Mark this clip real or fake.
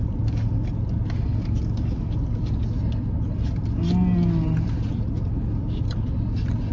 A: real